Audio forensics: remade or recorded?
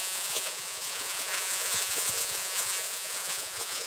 remade